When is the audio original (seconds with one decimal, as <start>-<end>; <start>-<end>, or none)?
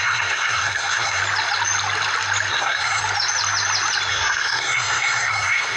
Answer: 1.2-2.5; 3.0-4.1